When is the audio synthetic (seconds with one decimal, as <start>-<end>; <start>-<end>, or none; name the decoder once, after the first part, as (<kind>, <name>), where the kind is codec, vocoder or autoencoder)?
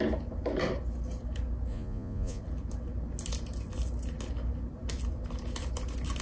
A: 1.7-2.4 (vocoder, Vocos)